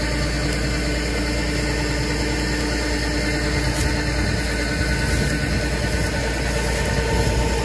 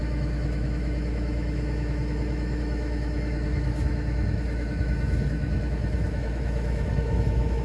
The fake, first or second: second